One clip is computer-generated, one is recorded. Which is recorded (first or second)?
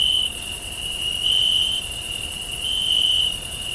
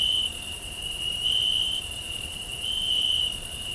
first